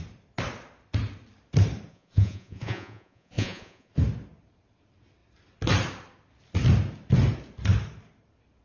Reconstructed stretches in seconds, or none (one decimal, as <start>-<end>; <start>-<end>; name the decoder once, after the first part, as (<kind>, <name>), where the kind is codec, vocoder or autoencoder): 1.9-3.9 (vocoder, Vocos)